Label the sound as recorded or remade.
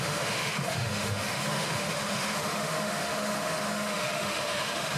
remade